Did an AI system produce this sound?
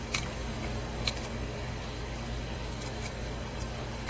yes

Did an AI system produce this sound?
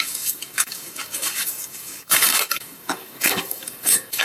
yes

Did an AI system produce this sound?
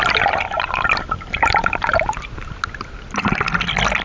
no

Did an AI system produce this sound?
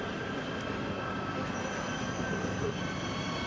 no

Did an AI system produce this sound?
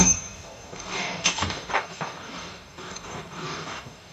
yes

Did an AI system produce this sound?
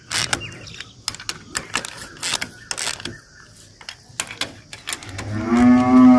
no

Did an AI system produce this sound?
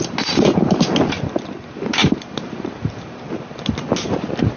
no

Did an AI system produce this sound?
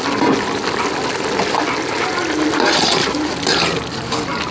no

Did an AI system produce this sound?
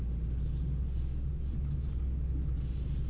no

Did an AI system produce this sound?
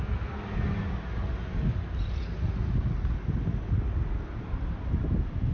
no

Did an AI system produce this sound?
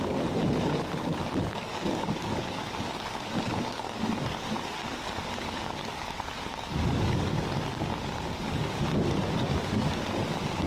yes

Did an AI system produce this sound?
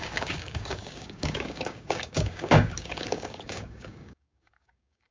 yes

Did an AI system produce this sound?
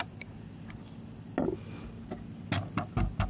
no